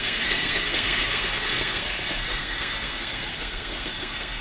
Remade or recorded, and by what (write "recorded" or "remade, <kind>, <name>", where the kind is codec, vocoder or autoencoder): remade, codec, SNAC